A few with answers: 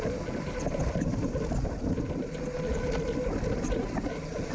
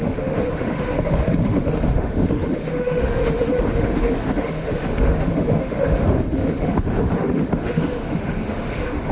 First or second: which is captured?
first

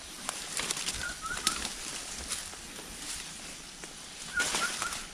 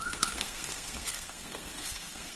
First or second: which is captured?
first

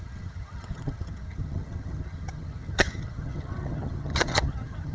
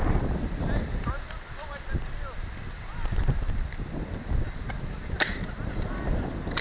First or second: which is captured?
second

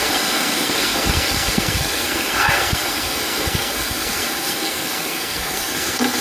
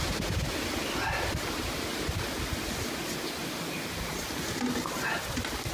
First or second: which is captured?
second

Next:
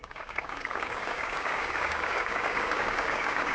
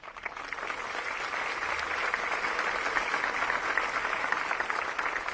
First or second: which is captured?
second